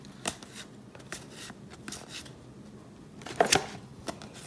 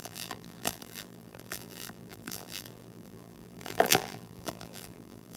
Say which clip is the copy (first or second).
second